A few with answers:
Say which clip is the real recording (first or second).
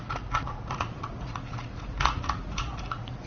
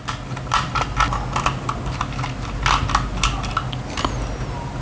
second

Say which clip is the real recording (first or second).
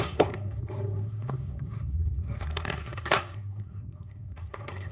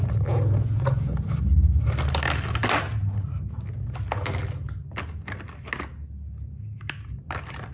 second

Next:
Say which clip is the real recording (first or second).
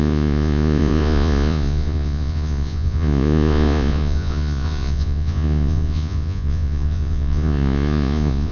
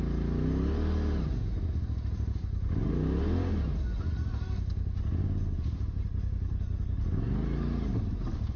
second